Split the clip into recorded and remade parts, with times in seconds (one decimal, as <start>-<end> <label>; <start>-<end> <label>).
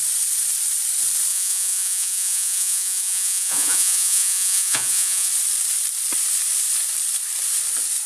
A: 0.0-1.3 recorded; 1.3-5.3 remade; 5.3-8.1 recorded